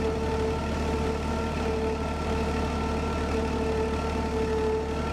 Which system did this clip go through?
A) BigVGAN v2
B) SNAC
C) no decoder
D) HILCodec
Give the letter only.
C